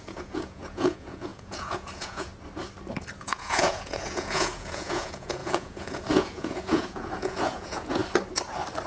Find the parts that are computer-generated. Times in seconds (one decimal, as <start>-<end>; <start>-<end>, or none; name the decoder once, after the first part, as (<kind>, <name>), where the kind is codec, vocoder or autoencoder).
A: 0.0-2.3 (vocoder, Vocos); 3.2-8.0